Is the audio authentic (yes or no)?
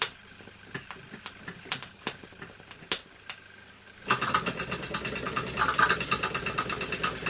yes